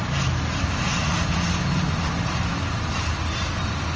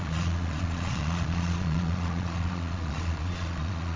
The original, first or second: first